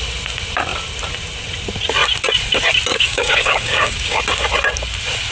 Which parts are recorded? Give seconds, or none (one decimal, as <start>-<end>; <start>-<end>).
0.0-2.9; 4.2-5.3